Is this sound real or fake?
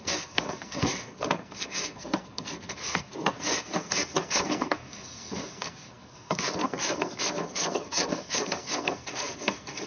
fake